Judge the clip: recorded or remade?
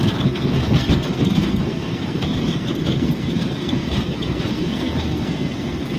remade